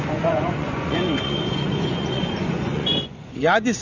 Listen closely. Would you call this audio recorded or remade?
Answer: remade